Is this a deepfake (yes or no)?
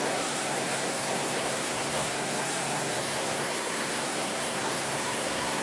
yes